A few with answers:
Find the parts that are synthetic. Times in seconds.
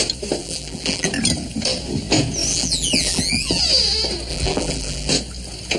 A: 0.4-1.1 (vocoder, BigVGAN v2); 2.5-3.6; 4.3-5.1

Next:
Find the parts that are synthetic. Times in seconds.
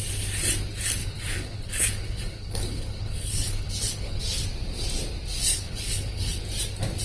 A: 1.0-4.2 (codec, HILCodec); 5.5-6.4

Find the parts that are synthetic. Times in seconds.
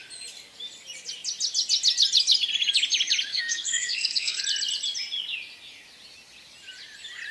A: 3.3-4.4 (codec, SNAC)